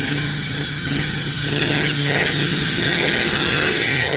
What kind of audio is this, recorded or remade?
remade